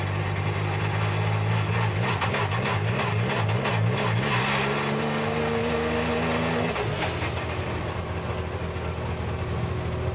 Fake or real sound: real